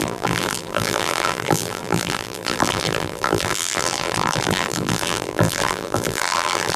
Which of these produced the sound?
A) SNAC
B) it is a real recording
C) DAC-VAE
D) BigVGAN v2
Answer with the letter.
D